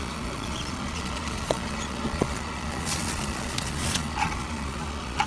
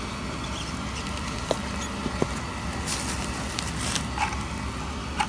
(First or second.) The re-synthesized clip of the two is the first